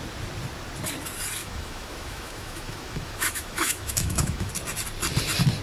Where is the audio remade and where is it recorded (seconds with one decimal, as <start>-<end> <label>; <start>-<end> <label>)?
0.0-1.4 recorded; 1.4-4.5 remade; 4.5-5.6 recorded